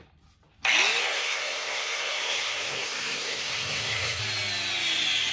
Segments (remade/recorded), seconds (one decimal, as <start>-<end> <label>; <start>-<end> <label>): 0.0-1.0 recorded; 1.0-4.2 remade; 4.2-5.3 recorded